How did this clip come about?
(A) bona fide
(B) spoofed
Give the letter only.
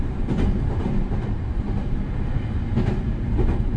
A